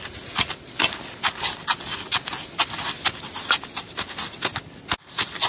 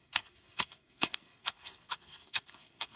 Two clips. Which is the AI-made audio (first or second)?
second